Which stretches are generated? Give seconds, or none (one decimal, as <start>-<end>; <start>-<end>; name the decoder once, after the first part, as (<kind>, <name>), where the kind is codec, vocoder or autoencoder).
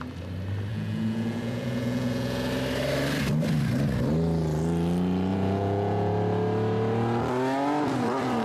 0.7-2.5 (vocoder, Vocos); 5.3-6.1